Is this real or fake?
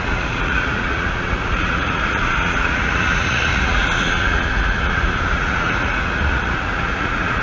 fake